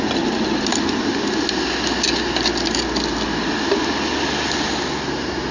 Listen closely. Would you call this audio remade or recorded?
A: recorded